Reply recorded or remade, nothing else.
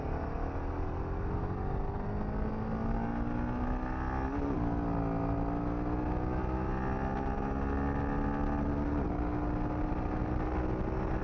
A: recorded